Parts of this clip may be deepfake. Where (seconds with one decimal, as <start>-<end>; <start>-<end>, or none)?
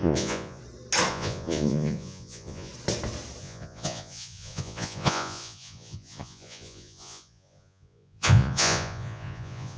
0.0-0.6; 1.1-2.7; 3.4-9.8